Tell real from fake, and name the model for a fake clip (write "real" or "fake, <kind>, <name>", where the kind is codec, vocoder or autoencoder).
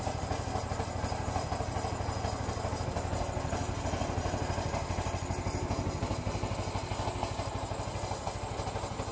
real